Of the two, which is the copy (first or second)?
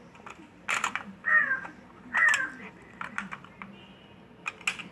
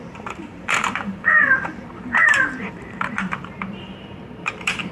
second